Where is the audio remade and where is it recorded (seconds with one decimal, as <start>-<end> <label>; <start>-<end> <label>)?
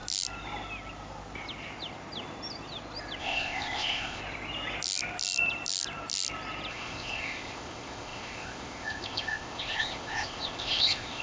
0.0-3.2 recorded; 3.2-4.2 remade; 4.2-6.7 recorded; 6.7-11.2 remade